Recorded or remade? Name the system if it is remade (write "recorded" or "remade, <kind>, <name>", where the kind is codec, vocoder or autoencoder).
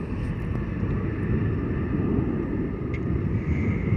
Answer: recorded